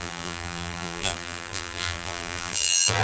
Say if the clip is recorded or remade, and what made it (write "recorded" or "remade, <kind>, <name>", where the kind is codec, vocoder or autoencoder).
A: remade, vocoder, BigVGAN v2